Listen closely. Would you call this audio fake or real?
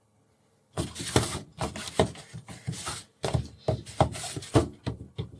real